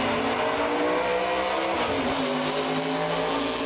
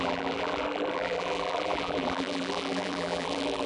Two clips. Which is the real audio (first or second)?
first